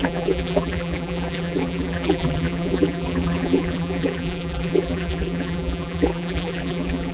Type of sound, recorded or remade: remade